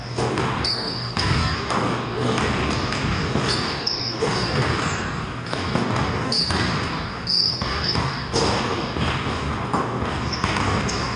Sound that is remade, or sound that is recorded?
remade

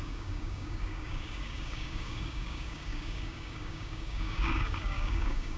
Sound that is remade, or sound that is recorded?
remade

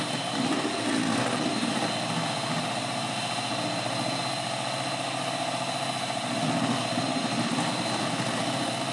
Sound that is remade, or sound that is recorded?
recorded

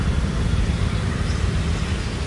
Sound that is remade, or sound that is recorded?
recorded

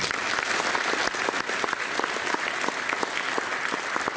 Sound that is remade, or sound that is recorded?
recorded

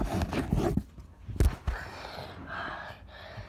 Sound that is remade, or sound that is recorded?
recorded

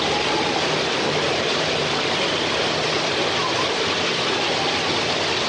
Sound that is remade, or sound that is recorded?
recorded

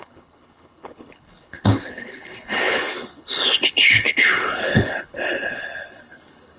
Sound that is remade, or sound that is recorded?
remade